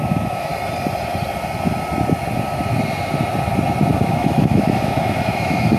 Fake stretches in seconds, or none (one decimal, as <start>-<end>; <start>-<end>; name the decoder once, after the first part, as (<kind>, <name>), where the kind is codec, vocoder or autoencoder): 0.0-0.5 (autoencoder, DAC-VAE); 3.9-5.8